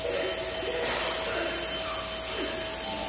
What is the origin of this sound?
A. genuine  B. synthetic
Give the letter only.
A